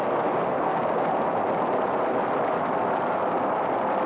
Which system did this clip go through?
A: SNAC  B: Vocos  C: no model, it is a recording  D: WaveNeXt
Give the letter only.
C